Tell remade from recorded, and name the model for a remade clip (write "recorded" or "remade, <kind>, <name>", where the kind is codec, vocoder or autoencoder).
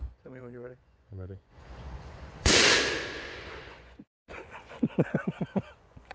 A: remade, vocoder, Vocos